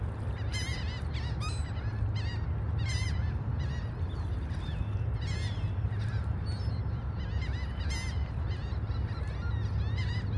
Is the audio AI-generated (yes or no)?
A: no